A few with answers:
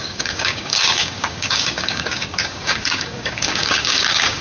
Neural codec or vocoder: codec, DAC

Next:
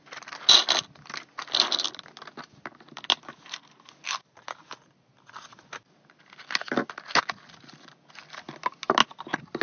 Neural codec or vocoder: none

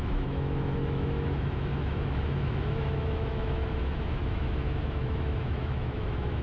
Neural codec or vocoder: autoencoder, DAC-VAE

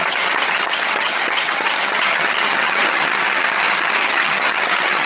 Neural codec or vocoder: vocoder, HiFi-GAN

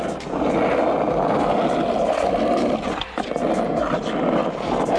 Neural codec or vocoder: none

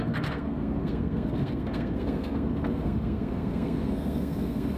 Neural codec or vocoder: codec, SNAC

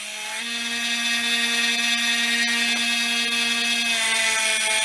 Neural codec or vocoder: none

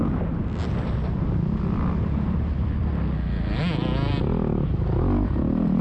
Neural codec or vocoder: none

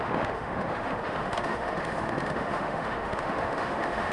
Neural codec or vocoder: autoencoder, DAC-VAE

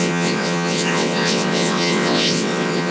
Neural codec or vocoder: vocoder, WaveNeXt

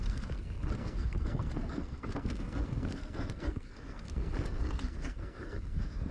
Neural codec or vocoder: codec, SNAC